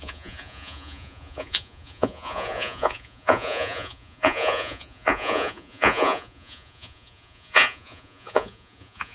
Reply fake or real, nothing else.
fake